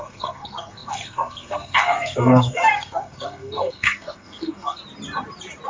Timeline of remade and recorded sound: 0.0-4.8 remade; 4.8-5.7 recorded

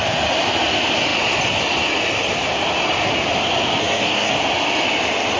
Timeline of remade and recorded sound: 0.0-3.8 recorded; 3.8-4.3 remade; 4.3-5.4 recorded

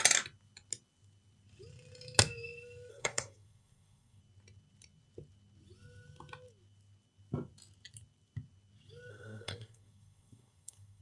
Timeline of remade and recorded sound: 0.0-2.9 recorded; 2.9-4.2 remade; 4.2-9.1 recorded; 9.1-11.0 remade

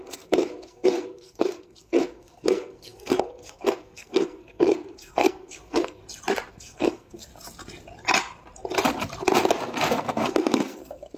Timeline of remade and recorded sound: 0.0-6.0 remade; 6.0-6.5 recorded; 6.5-7.3 remade; 7.3-9.9 recorded; 9.9-11.2 remade

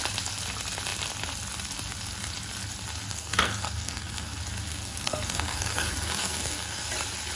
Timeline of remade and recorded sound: 0.0-3.1 recorded; 3.1-4.3 remade; 4.3-4.7 recorded; 4.7-6.9 remade; 6.9-7.4 recorded

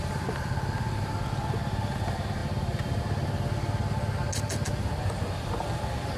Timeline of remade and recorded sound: 0.0-6.2 recorded